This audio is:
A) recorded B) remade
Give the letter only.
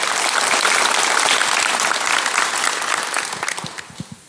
A